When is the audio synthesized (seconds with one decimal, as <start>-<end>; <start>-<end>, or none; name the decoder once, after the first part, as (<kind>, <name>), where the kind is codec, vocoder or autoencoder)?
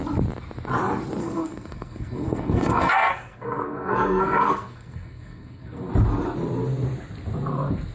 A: 1.2-5.9 (codec, SNAC)